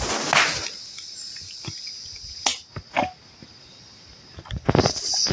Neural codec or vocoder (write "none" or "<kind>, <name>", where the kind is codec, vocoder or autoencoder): none